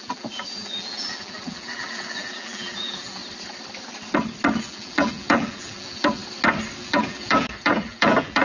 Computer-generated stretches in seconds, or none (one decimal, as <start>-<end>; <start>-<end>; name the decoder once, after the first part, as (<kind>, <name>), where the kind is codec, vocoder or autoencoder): 0.0-3.2 (vocoder, BigVGAN v2); 4.6-6.2; 6.8-8.4